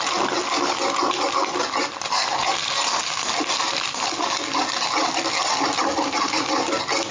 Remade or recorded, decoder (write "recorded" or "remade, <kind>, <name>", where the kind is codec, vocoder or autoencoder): recorded